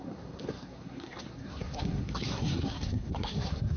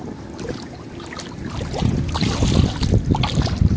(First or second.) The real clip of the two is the second